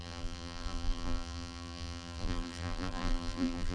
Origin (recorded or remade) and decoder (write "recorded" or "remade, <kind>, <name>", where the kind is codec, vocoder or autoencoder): remade, vocoder, BigVGAN v2